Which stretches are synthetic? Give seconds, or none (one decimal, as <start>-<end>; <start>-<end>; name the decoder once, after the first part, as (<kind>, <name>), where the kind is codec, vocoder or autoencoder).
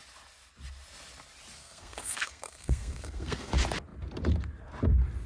1.6-3.5 (codec, SNAC)